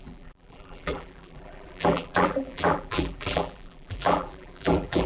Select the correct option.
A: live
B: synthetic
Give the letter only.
B